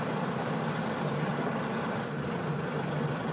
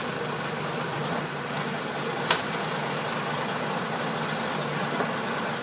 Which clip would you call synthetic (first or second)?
first